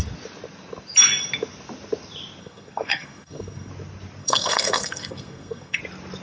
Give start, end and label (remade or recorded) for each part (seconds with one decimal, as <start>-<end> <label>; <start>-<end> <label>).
0.0-2.4 recorded; 2.4-3.7 remade; 3.7-4.2 recorded; 4.2-5.8 remade; 5.8-6.2 recorded